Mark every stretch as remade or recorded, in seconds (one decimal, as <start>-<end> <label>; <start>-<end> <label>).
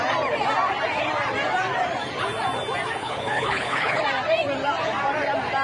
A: 0.0-3.0 recorded; 3.0-4.0 remade; 4.0-5.6 recorded